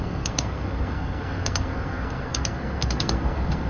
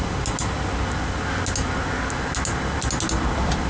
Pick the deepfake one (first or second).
first